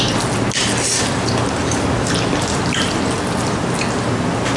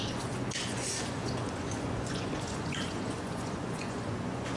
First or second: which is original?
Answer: first